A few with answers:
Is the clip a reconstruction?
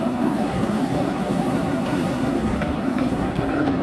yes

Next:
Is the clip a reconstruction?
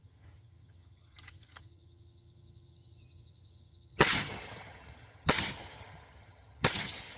yes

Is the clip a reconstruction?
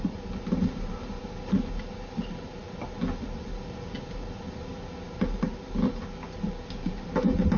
no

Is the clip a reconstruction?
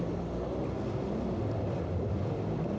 no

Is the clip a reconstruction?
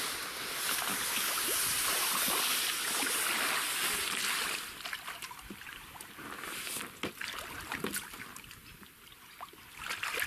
no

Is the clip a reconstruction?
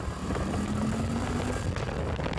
no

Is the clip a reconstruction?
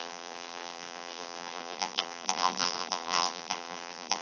yes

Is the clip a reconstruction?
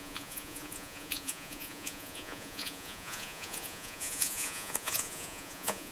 yes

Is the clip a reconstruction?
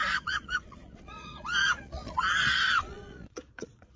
yes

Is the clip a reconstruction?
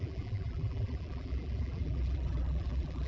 yes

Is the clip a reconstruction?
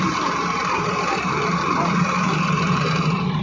yes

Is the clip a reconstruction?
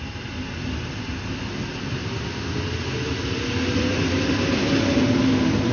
no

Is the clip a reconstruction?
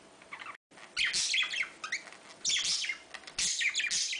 no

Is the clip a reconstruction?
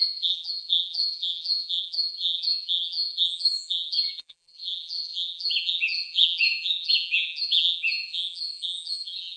yes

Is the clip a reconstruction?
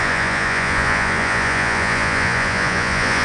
yes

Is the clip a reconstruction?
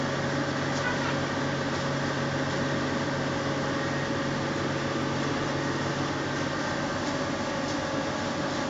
no